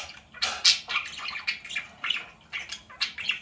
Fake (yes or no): no